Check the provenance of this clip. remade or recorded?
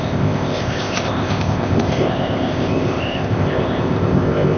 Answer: remade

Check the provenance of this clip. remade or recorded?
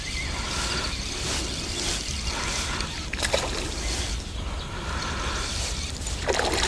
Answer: recorded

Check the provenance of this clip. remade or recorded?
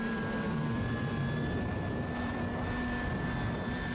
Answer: remade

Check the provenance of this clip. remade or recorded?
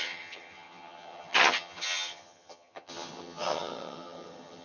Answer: remade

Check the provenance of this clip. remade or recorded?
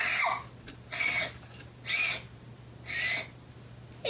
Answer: recorded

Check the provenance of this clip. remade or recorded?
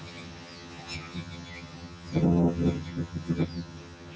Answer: remade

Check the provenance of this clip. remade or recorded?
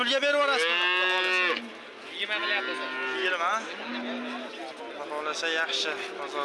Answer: recorded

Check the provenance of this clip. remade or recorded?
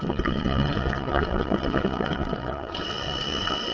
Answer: remade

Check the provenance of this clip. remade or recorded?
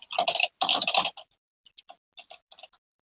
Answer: recorded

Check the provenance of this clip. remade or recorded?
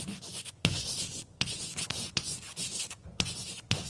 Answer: remade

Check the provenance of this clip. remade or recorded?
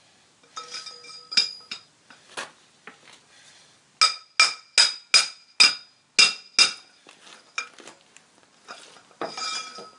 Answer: recorded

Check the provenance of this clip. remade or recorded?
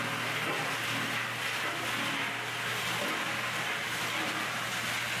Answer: recorded